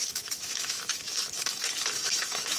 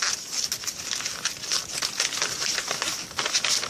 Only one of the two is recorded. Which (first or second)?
second